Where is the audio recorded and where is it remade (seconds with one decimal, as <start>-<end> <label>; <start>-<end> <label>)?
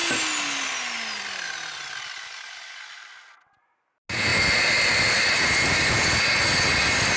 0.0-7.2 recorded